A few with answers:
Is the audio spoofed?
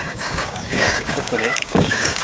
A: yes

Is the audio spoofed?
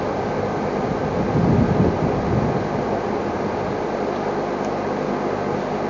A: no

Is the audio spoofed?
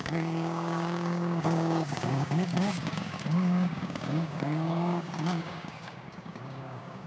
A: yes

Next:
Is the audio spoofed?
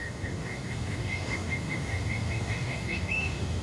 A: yes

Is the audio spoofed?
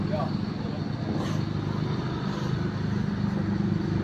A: no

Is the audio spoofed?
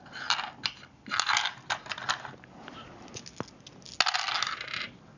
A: no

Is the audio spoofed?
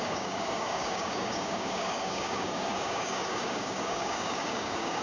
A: yes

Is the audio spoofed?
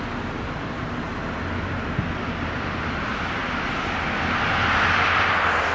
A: no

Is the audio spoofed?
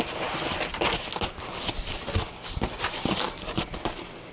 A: no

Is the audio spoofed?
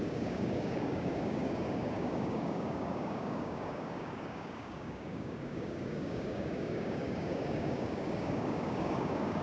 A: yes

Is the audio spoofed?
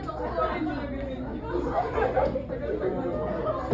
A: no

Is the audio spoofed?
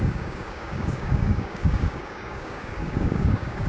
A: yes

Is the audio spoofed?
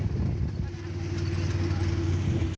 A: no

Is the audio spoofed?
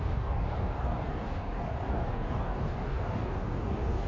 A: yes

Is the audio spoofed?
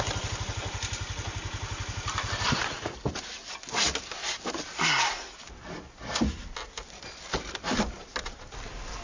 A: no